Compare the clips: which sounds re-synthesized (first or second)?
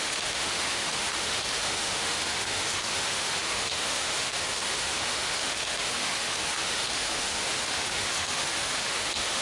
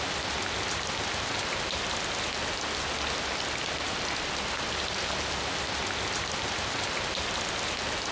first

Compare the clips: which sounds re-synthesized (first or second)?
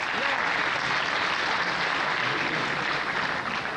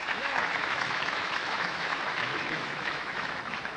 second